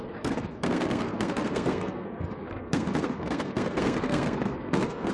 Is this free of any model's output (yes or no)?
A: no